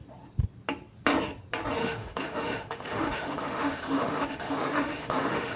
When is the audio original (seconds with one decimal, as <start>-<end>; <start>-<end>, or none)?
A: 0.0-1.8